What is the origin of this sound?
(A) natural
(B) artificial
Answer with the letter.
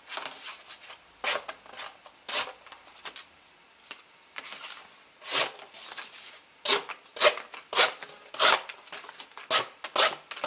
A